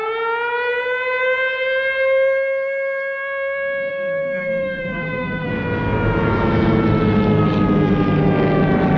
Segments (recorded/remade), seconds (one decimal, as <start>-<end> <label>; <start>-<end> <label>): 0.0-3.9 recorded; 3.9-5.5 remade; 5.5-9.0 recorded

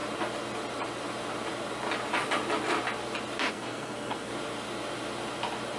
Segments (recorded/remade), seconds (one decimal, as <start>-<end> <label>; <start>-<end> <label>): 0.0-3.5 recorded; 3.5-4.3 remade; 4.3-5.8 recorded

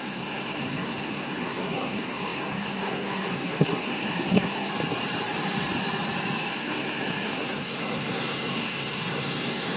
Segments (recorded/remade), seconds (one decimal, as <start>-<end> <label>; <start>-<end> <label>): 0.0-4.7 remade; 4.7-6.5 recorded; 6.5-9.8 remade